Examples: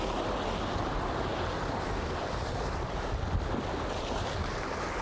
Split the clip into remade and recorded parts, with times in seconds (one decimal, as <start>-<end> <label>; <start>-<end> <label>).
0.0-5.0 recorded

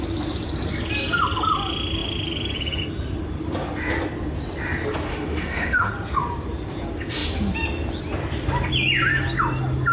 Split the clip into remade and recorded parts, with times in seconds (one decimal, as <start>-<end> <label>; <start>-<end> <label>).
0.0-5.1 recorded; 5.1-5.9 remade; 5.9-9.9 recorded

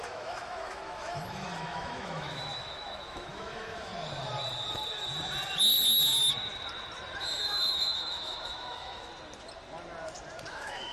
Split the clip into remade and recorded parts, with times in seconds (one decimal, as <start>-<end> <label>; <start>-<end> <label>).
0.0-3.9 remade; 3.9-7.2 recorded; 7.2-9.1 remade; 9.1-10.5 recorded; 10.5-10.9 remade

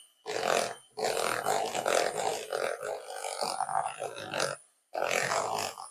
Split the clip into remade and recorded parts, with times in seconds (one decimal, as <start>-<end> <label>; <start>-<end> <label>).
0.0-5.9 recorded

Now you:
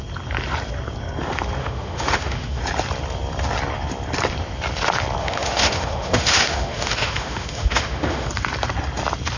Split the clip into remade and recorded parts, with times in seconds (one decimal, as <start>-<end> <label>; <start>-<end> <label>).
0.0-1.6 recorded; 1.6-2.6 remade; 2.6-5.2 recorded; 5.2-8.3 remade; 8.3-9.4 recorded

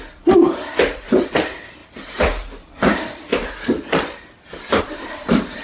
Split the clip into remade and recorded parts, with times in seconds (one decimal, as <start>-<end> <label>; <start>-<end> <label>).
0.0-5.6 recorded

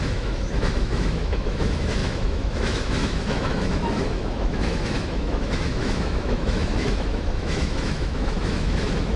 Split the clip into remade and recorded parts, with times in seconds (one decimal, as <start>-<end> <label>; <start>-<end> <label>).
0.0-9.2 remade